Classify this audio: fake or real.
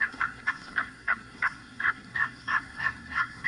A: fake